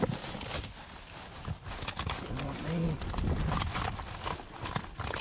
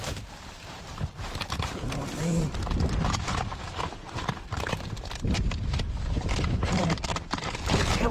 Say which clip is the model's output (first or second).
second